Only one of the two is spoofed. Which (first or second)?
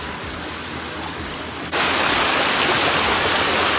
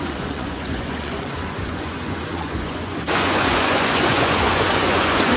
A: second